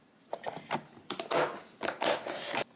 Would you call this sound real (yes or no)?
yes